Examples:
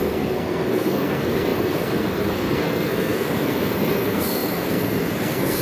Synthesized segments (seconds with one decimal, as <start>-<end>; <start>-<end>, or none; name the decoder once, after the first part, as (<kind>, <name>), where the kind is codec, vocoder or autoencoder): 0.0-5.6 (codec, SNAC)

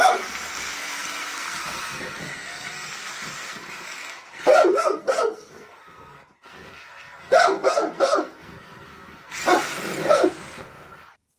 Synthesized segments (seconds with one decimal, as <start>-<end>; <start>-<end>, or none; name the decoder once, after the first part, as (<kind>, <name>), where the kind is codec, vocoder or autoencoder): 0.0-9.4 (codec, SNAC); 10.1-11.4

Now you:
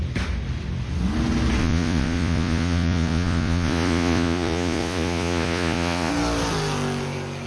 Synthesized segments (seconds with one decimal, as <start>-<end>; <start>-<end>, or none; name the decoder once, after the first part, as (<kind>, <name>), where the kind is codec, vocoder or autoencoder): 1.6-6.1 (vocoder, Vocos)

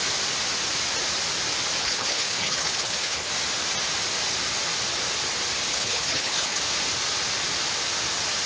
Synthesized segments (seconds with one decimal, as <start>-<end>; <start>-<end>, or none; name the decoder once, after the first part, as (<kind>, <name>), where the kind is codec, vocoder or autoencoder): 1.8-3.3 (codec, HILCodec); 5.7-6.6

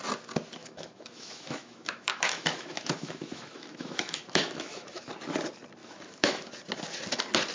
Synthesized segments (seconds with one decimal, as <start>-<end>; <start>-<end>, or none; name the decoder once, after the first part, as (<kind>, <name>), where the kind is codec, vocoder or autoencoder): 0.6-5.1 (autoencoder, DAC-VAE); 5.8-6.5

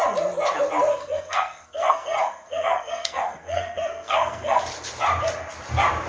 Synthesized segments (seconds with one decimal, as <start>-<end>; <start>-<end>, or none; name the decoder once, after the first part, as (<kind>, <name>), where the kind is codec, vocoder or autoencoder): 0.9-4.6 (codec, SNAC)